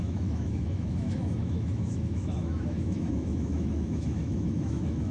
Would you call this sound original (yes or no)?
no